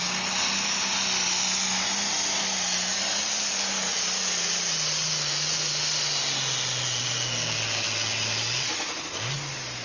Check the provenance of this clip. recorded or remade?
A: recorded